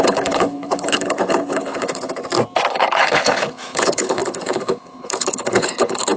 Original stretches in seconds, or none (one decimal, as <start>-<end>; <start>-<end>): 2.2-2.7